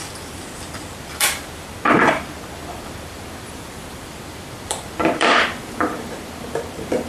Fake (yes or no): yes